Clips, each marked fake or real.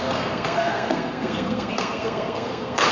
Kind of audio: fake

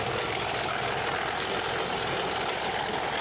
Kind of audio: real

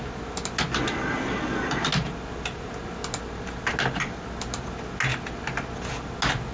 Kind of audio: real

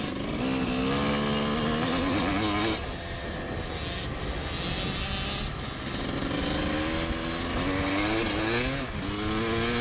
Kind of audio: real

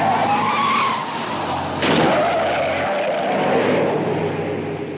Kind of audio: real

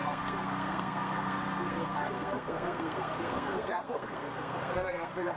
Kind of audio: fake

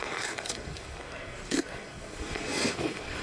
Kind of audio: fake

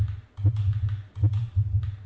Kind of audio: real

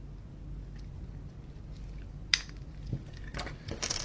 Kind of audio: real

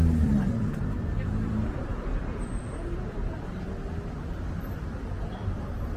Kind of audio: fake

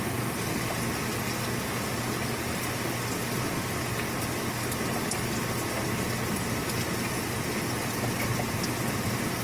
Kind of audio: real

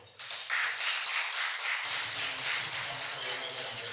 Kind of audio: real